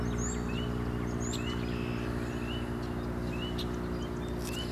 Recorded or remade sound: recorded